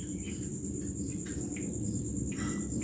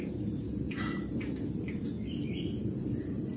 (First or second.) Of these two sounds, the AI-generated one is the second